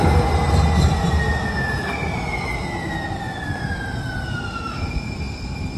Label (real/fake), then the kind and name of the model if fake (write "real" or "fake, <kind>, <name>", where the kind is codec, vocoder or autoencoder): real